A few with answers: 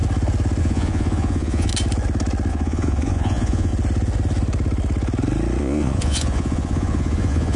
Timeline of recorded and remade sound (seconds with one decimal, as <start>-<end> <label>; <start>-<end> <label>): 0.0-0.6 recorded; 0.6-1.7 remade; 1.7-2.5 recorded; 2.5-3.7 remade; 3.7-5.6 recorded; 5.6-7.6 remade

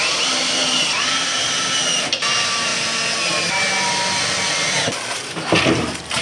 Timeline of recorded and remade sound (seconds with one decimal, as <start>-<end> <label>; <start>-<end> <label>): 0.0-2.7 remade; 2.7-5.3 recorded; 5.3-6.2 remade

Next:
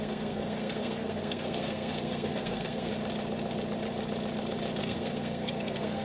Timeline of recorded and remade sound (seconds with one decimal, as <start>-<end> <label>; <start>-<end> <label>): 0.0-2.9 remade; 2.9-4.8 recorded; 4.8-6.0 remade

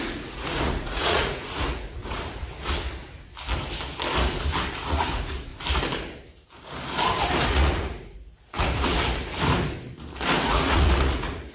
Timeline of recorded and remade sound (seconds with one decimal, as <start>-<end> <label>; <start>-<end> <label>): 0.0-2.5 remade; 2.5-4.8 recorded; 4.8-5.5 remade; 5.5-7.5 recorded; 7.5-8.9 remade; 8.9-10.4 recorded; 10.4-11.5 remade